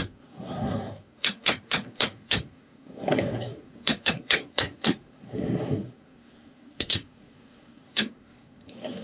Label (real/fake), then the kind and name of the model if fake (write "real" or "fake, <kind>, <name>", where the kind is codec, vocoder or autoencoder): fake, codec, SNAC